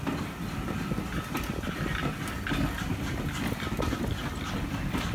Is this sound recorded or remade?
recorded